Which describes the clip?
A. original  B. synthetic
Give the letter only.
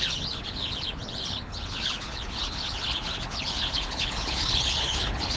B